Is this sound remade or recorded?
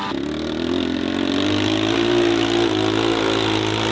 recorded